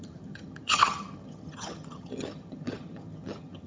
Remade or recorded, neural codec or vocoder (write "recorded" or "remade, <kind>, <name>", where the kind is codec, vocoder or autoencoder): remade, vocoder, HiFi-GAN